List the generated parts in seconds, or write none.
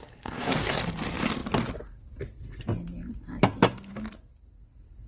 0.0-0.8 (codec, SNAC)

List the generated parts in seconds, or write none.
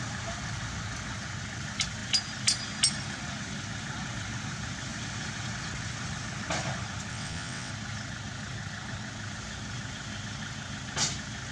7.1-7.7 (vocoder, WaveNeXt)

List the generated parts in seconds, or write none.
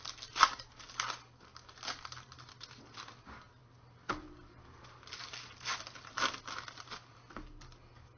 none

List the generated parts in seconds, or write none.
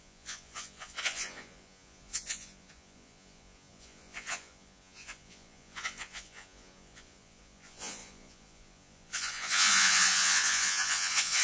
0.0-11.4 (vocoder, Vocos)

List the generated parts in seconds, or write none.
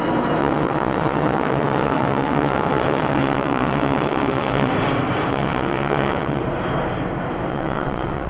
0.4-4.7 (vocoder, WaveNeXt); 5.3-6.4; 7.5-8.3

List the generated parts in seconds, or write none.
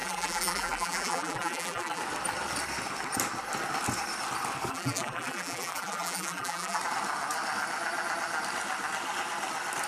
0.0-2.0 (vocoder, BigVGAN v2); 4.7-6.8